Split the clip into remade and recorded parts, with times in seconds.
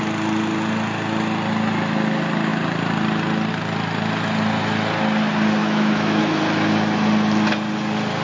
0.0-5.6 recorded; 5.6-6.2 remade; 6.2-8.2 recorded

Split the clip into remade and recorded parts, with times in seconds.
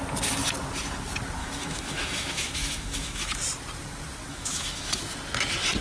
0.0-1.4 recorded; 1.4-3.4 remade; 3.4-4.3 recorded; 4.3-5.0 remade; 5.0-5.8 recorded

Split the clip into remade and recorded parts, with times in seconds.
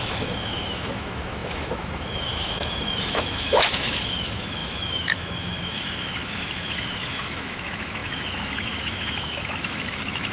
0.0-10.3 remade